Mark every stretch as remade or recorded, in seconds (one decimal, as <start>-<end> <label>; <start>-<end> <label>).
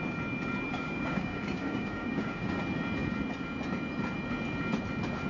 0.0-0.7 recorded; 0.7-2.6 remade; 2.6-5.3 recorded